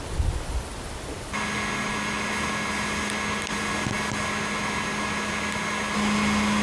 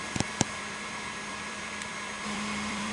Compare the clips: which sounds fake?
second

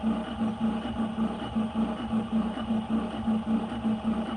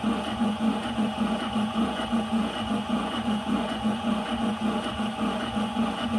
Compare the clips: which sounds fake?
second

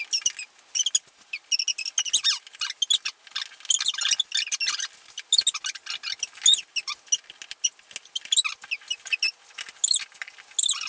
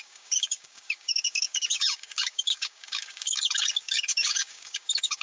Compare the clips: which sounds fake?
second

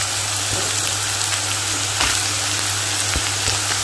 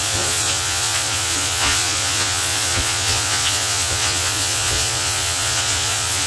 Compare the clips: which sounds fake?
second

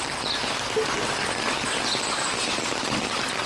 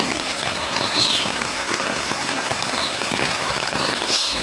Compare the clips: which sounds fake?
second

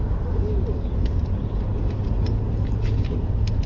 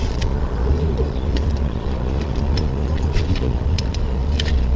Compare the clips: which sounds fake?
second